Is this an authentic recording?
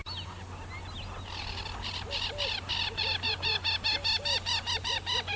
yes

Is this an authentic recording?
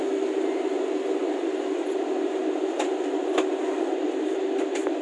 yes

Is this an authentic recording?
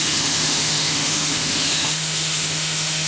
no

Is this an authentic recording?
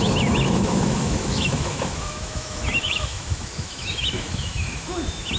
no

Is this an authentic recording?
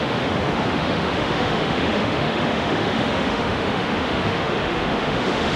no